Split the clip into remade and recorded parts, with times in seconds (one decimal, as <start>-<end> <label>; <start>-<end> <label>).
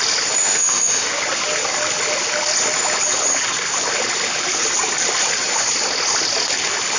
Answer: 0.0-0.4 recorded; 0.4-1.2 remade; 1.2-7.0 recorded